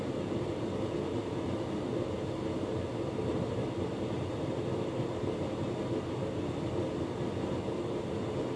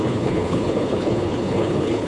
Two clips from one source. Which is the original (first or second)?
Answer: first